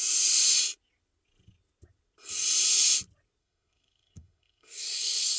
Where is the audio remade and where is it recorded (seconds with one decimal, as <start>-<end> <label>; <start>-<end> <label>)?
0.0-3.4 recorded; 3.4-5.4 remade